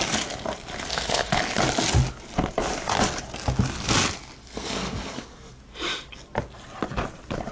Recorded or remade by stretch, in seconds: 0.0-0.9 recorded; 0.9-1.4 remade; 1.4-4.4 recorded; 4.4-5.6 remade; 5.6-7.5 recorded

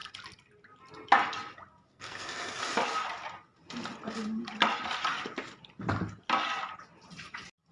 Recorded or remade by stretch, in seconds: 0.0-1.9 recorded; 1.9-2.6 remade; 2.6-7.7 recorded

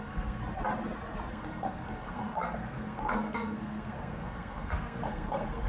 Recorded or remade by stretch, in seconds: 0.0-0.4 remade; 0.4-1.3 recorded; 1.3-5.7 remade

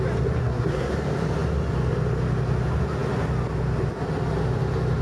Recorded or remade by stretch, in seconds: 0.0-0.4 recorded; 0.4-0.9 remade; 0.9-5.0 recorded

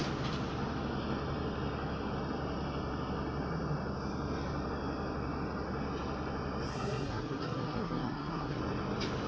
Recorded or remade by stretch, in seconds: 0.0-6.7 recorded; 6.7-8.6 remade; 8.6-9.3 recorded